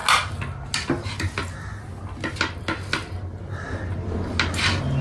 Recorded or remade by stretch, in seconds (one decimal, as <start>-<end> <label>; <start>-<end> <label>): 0.0-5.0 recorded